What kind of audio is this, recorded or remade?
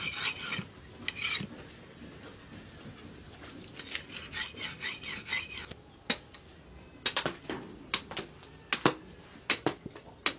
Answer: recorded